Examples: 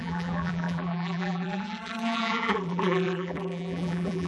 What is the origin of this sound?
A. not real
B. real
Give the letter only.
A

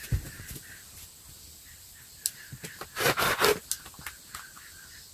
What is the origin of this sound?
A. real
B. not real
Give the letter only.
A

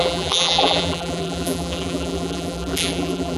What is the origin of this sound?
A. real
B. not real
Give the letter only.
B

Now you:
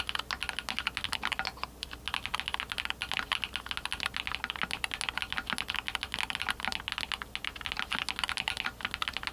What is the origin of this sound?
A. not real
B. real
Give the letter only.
B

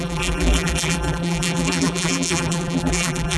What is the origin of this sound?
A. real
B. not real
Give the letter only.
B